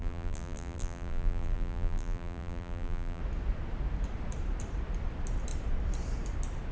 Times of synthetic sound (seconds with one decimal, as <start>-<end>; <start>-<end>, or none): 0.0-3.2